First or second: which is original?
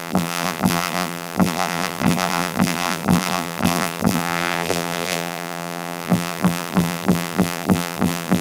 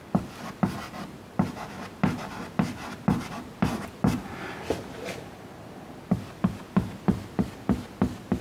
second